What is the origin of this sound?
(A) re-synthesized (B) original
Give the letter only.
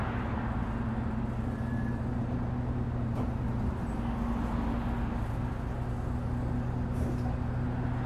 B